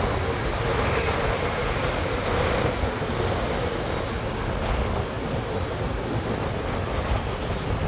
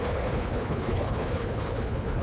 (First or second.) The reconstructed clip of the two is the second